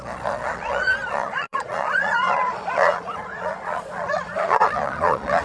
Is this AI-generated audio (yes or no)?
yes